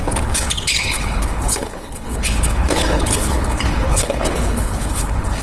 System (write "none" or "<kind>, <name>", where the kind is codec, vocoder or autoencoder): codec, HILCodec